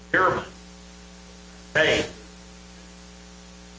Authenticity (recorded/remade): recorded